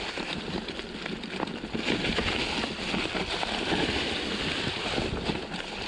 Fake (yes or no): no